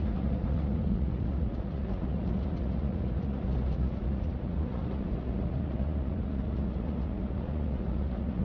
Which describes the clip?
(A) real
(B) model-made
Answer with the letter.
B